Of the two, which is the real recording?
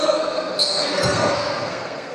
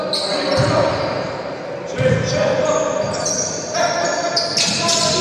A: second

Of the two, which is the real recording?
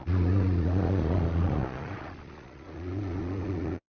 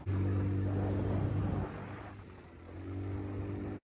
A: second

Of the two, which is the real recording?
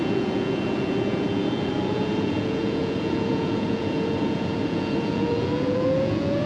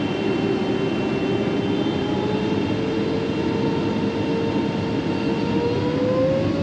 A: second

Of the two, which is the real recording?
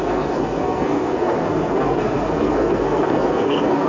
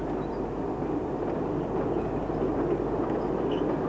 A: second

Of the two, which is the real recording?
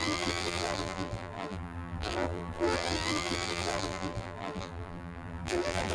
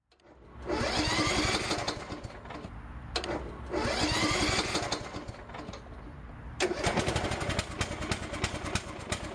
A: second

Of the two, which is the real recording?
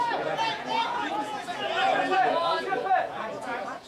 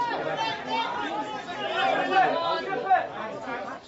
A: second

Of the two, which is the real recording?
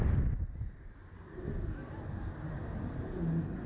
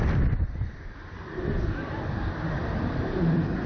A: first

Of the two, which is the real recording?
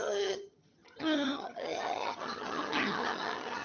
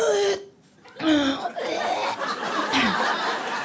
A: second